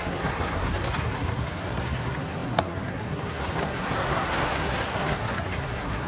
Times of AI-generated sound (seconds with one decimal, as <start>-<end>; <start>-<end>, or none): 0.0-6.1